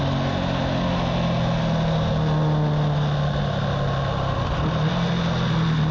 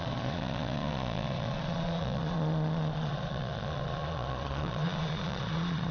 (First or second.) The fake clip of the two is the second